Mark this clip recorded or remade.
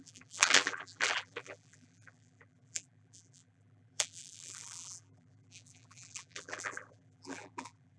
remade